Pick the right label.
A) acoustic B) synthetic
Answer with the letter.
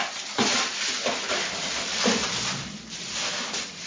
B